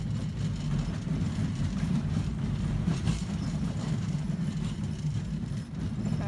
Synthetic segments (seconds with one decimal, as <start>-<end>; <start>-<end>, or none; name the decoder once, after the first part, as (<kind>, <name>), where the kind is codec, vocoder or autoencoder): 1.4-5.2 (vocoder, BigVGAN v2)